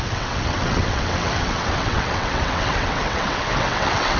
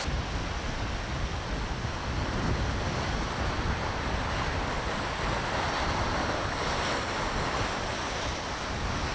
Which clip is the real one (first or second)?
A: second